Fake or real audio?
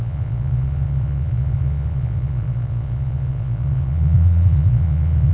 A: fake